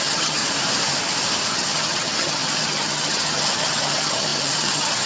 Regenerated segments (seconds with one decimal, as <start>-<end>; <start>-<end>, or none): 0.0-0.4; 1.5-5.1